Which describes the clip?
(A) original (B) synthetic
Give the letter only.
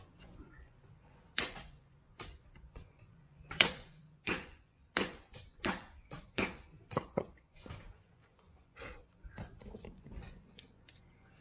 B